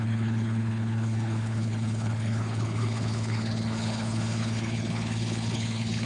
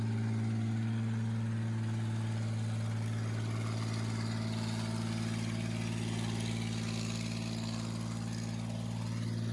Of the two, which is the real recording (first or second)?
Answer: second